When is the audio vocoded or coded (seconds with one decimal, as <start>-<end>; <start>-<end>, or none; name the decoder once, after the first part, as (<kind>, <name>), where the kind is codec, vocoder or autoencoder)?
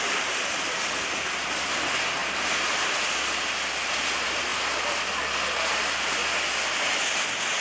0.0-2.2 (vocoder, BigVGAN v2); 4.0-6.2